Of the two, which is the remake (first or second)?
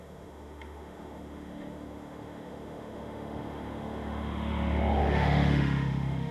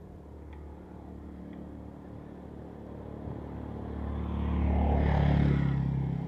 first